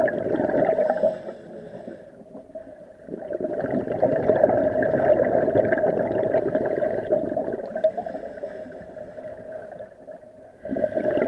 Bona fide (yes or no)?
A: no